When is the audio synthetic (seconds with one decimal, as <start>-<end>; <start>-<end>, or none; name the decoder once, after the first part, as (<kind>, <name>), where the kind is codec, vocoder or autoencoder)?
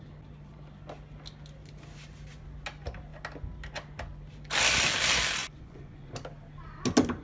5.4-6.1 (vocoder, Vocos)